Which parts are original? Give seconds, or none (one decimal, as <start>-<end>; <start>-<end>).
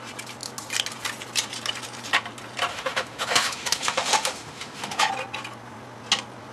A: 0.0-2.7; 5.1-6.5